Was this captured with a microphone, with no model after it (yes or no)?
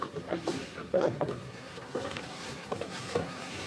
no